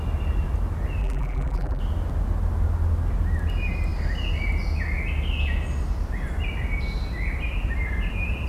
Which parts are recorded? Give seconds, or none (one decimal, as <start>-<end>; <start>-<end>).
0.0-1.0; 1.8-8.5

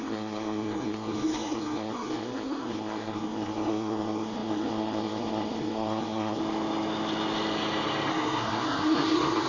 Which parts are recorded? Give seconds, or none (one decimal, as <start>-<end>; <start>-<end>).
6.4-8.1

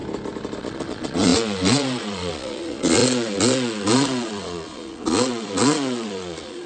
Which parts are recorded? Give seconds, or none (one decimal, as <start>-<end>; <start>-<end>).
0.0-0.6

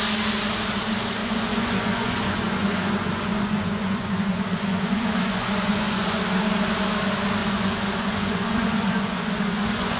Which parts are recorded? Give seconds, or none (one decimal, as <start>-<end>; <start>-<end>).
0.0-1.2; 6.2-7.4

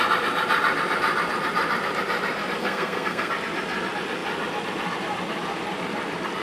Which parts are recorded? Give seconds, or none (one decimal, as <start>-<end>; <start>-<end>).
0.0-2.6; 3.3-6.4

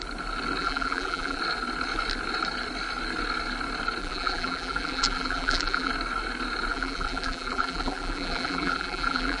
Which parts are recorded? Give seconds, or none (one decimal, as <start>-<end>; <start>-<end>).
0.0-0.6; 1.4-4.0; 5.9-6.7

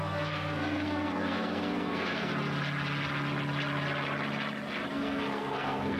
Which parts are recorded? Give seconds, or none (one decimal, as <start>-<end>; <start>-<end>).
2.3-4.9